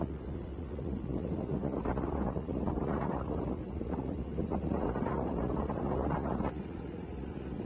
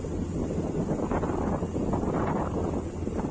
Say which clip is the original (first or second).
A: second